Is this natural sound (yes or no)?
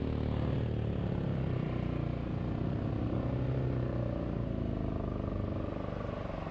yes